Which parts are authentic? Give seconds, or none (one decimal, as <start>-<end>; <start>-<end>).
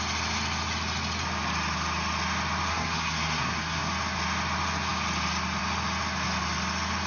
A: 0.0-2.7; 3.9-7.1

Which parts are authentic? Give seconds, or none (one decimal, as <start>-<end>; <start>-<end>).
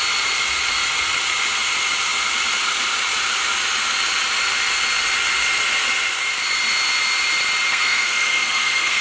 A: 0.0-7.7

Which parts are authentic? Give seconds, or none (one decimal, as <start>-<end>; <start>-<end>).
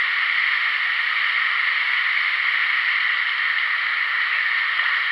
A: 0.0-5.1